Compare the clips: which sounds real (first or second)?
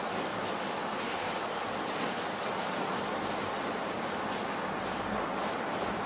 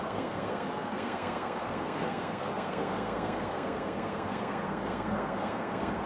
first